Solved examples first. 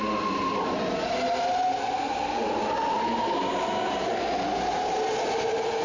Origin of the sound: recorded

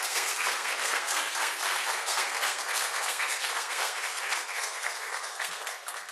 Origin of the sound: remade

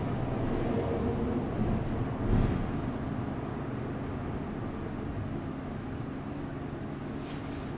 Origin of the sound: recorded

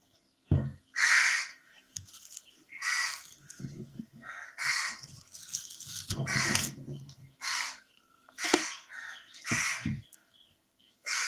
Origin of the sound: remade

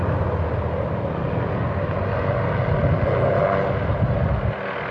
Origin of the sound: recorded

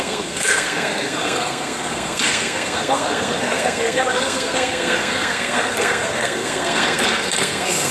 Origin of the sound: remade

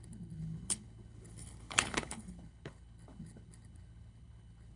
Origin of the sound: remade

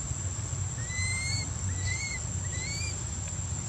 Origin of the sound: recorded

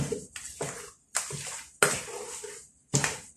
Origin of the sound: recorded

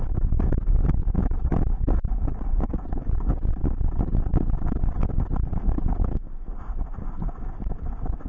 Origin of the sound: recorded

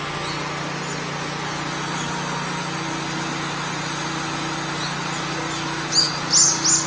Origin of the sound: recorded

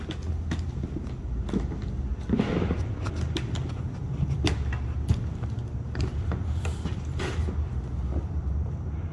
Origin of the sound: recorded